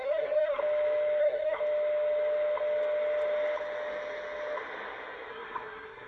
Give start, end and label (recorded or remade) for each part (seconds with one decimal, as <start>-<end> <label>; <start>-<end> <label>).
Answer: 0.0-0.6 remade; 0.6-1.2 recorded; 1.2-1.6 remade; 1.6-5.3 recorded; 5.3-6.1 remade